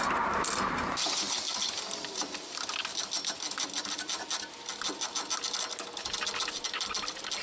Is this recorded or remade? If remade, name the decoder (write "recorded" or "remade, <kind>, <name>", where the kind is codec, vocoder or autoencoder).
recorded